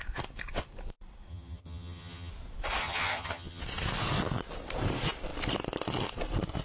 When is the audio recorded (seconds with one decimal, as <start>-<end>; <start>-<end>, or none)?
0.0-1.3; 2.3-2.8; 3.6-6.6